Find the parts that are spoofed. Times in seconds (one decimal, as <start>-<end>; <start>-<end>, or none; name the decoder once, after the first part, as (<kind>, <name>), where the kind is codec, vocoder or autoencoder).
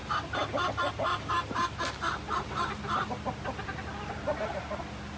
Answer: none